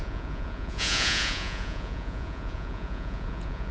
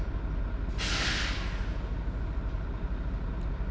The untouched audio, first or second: second